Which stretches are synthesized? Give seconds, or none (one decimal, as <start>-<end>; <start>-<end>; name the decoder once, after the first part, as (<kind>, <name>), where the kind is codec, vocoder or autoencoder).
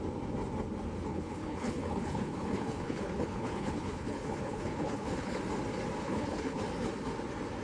1.1-5.4 (codec, HILCodec); 6.0-6.6